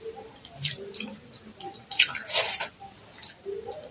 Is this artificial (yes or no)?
no